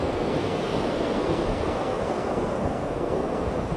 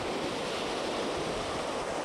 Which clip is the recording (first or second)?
second